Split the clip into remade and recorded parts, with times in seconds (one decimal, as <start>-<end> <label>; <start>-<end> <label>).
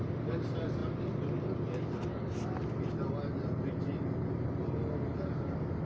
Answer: 0.0-5.9 recorded